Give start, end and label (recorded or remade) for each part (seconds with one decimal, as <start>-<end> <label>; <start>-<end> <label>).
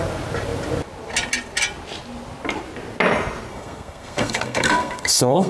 0.0-3.5 recorded; 3.5-5.5 remade